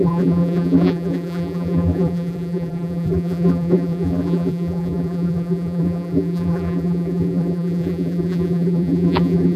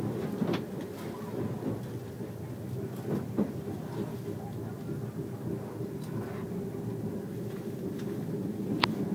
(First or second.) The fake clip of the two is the first